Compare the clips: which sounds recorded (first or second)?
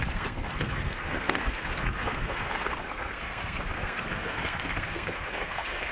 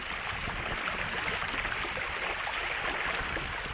second